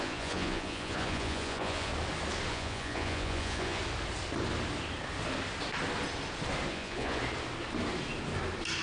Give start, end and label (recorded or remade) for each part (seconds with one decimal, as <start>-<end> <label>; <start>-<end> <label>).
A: 0.0-1.9 remade; 1.9-2.5 recorded; 2.5-3.8 remade; 3.8-6.7 recorded; 6.7-7.2 remade; 7.2-8.8 recorded